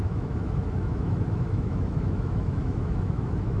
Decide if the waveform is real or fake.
fake